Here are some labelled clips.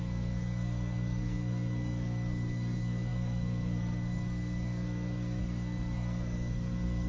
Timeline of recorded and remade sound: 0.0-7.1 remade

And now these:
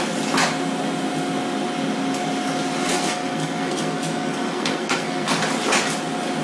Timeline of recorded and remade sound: 0.0-2.9 recorded; 2.9-5.3 remade; 5.3-6.4 recorded

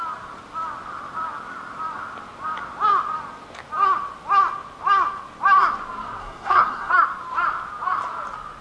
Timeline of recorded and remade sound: 0.0-6.2 recorded; 6.2-6.9 remade; 6.9-8.6 recorded

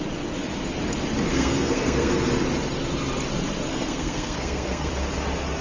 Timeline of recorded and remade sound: 0.0-1.3 recorded; 1.3-2.1 remade; 2.1-3.7 recorded; 3.7-4.9 remade; 4.9-5.6 recorded

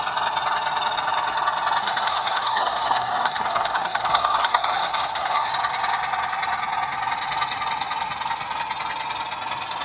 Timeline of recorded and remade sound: 0.0-1.8 recorded; 1.8-5.5 remade; 5.5-9.8 recorded

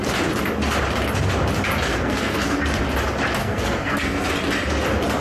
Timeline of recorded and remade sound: 0.0-1.9 recorded; 1.9-2.6 remade; 2.6-3.4 recorded; 3.4-4.3 remade; 4.3-5.2 recorded

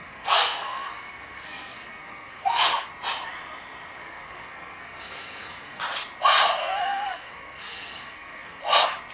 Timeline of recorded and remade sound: 0.0-2.9 remade; 2.9-4.0 recorded; 4.0-5.8 remade; 5.8-6.6 recorded; 6.6-8.6 remade; 8.6-9.1 recorded

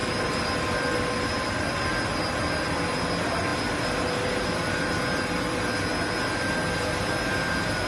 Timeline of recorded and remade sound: 0.0-7.9 recorded